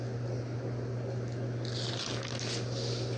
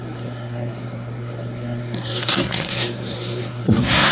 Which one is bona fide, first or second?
first